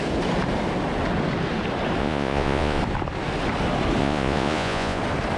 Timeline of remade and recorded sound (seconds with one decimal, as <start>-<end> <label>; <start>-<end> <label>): 0.0-2.0 recorded; 2.0-2.8 remade; 2.8-4.0 recorded; 4.0-5.0 remade; 5.0-5.4 recorded